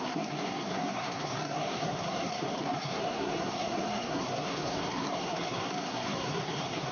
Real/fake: fake